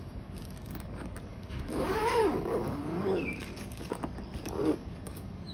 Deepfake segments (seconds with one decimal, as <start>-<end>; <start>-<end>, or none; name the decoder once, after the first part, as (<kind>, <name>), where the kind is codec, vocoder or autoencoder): 0.0-5.5 (codec, DAC)

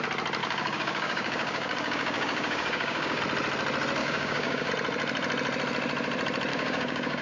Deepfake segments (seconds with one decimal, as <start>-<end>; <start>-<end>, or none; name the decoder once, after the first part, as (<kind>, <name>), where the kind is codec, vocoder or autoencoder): 0.4-3.2 (codec, DAC); 4.0-4.7; 6.5-7.2

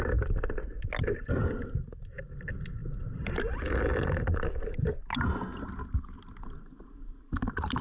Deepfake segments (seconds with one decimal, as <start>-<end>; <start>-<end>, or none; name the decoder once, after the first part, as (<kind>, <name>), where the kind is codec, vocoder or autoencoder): 2.8-3.6 (vocoder, BigVGAN v2)

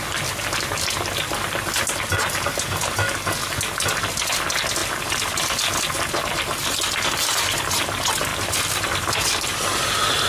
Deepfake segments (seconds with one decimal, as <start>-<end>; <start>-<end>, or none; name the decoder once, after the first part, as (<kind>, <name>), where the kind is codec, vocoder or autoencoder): 4.8-5.7 (vocoder, BigVGAN v2); 8.3-9.9

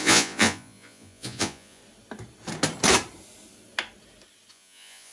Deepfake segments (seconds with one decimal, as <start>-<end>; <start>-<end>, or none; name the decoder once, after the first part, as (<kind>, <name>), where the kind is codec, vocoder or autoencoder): 0.0-1.8 (vocoder, Vocos); 4.5-5.1

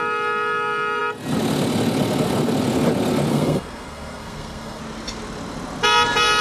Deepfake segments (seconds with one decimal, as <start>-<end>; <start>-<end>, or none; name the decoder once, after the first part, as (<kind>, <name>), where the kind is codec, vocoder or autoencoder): 3.3-4.8 (codec, SNAC)